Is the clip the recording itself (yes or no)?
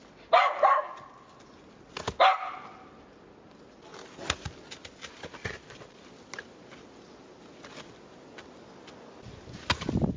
yes